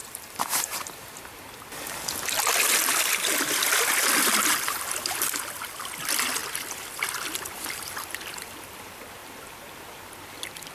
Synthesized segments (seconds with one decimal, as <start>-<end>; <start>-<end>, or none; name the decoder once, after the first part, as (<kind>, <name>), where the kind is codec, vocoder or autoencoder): none

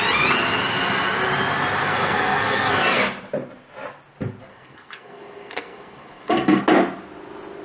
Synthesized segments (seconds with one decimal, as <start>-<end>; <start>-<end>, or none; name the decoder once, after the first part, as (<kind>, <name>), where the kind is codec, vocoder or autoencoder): 1.8-3.0 (codec, SNAC); 4.5-6.6

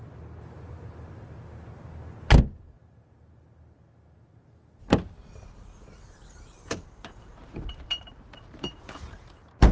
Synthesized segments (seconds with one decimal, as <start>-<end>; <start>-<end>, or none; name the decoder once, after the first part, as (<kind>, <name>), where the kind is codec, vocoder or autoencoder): 5.2-9.1 (vocoder, BigVGAN v2)

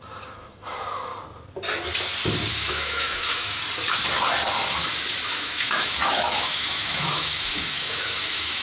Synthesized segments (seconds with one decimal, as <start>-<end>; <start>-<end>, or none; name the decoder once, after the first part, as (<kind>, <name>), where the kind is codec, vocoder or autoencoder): 0.0-1.1 (autoencoder, DAC-VAE); 2.5-3.6; 5.3-8.6

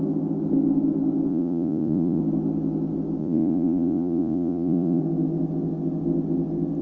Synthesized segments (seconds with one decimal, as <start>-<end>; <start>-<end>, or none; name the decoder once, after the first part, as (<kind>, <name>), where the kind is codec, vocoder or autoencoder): 1.3-2.2 (vocoder, Vocos); 3.2-5.0

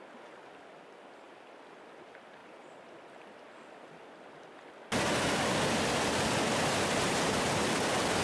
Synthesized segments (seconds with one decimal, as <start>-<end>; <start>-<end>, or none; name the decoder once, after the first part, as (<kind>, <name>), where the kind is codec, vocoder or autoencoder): none

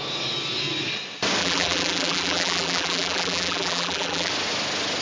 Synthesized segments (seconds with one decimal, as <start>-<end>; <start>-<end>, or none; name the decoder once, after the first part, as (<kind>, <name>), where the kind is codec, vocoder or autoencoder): 1.4-4.3 (vocoder, BigVGAN v2)